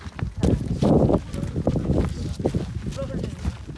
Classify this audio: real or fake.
real